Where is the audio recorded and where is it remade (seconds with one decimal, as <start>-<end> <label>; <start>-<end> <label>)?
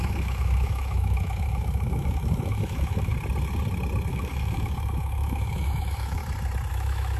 0.0-3.1 remade; 3.1-4.1 recorded; 4.1-6.2 remade; 6.2-6.7 recorded; 6.7-7.2 remade